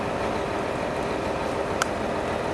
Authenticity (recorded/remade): remade